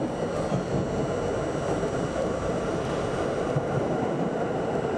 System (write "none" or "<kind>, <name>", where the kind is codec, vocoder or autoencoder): none